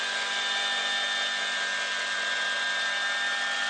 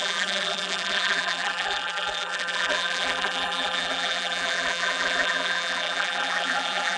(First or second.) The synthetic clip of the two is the second